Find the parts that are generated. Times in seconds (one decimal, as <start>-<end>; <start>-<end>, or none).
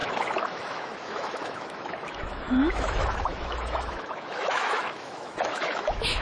0.0-6.2